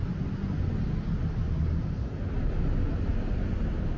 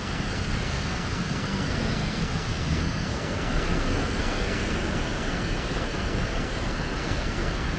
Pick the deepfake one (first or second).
second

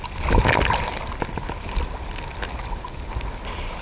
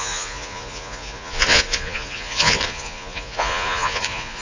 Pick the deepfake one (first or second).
second